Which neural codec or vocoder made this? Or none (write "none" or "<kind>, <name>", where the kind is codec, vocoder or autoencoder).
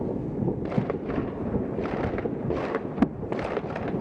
none